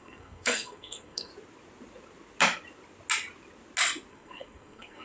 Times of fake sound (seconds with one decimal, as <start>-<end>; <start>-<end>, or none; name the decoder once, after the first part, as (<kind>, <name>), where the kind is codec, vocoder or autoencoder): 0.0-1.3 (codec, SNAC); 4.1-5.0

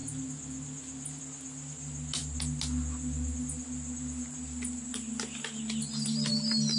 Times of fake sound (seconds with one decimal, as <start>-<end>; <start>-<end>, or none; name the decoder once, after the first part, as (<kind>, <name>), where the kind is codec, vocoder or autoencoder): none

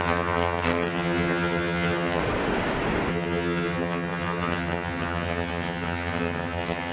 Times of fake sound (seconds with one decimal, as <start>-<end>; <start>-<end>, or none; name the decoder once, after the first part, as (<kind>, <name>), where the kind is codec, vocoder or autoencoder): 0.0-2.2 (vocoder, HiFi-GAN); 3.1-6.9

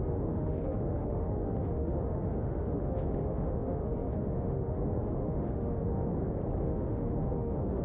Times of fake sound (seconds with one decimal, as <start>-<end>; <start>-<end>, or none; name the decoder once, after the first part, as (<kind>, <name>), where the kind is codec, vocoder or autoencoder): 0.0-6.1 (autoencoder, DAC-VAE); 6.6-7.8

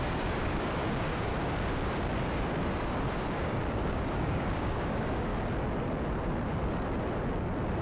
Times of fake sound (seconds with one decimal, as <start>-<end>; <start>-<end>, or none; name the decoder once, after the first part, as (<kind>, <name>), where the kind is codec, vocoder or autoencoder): 0.0-1.3 (codec, DAC); 2.1-5.3

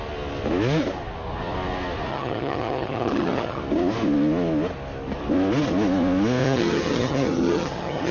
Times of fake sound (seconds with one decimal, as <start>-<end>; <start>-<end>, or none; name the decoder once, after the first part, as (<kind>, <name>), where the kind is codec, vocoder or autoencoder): 2.1-3.6 (vocoder, HiFi-GAN); 6.4-8.1

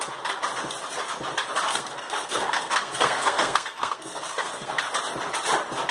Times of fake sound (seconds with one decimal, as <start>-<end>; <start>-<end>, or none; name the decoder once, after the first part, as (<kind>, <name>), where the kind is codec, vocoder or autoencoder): 1.7-4.8 (codec, SNAC)